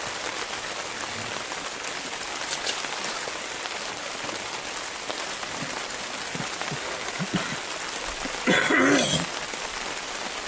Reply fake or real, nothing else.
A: real